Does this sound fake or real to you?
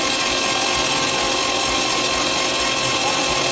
real